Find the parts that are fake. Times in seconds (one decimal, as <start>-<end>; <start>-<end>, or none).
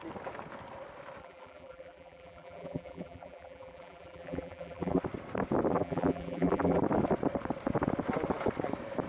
1.2-5.0; 5.7-6.8